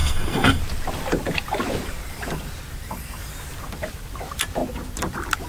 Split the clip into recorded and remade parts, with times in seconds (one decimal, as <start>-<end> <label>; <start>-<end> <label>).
0.0-0.6 remade; 0.6-5.5 recorded